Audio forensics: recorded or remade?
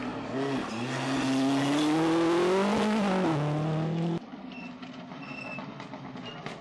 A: recorded